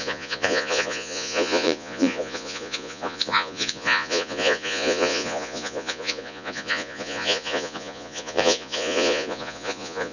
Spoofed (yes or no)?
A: yes